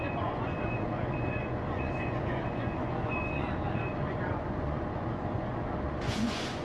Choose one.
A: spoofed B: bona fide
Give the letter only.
A